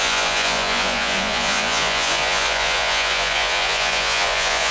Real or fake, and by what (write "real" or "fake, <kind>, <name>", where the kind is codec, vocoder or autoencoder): fake, vocoder, Vocos